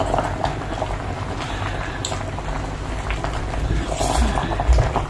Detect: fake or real real